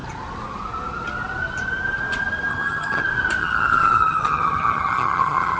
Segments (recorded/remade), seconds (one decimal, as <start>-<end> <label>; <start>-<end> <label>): 0.0-2.5 recorded; 2.5-3.0 remade; 3.0-3.4 recorded; 3.4-5.6 remade